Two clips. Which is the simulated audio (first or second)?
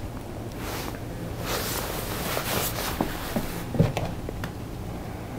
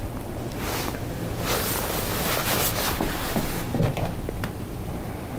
second